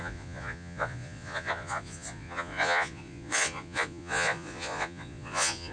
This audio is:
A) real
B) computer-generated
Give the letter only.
B